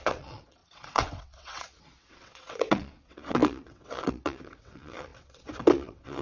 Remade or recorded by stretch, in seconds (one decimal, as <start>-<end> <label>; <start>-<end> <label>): 0.0-6.2 remade